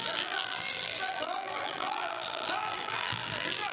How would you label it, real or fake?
fake